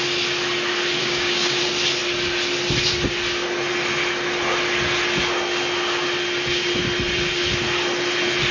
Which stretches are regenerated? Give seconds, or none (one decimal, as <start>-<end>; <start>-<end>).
1.0-1.6